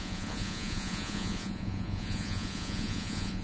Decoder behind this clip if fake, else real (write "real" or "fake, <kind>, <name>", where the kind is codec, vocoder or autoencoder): fake, vocoder, Vocos